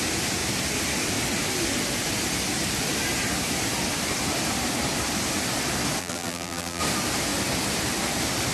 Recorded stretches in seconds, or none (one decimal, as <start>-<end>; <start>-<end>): 0.0-6.0; 6.8-8.5